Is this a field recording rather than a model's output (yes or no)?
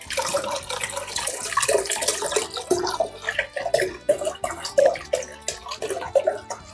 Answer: yes